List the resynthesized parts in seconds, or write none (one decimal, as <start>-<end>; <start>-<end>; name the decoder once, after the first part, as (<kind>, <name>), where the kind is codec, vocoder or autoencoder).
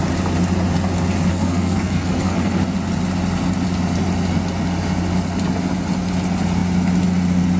1.3-2.6 (codec, SNAC)